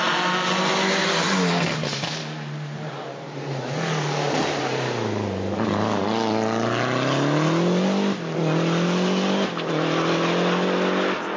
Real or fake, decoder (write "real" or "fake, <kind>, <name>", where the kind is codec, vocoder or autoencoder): real